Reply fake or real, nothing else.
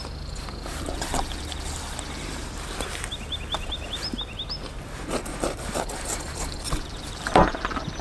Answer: real